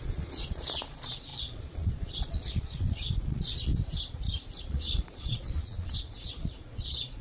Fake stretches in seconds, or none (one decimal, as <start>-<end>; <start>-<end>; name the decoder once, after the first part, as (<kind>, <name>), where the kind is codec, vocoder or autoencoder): 0.0-3.7 (vocoder, Vocos); 4.6-7.2